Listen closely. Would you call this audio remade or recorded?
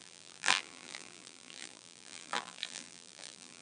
remade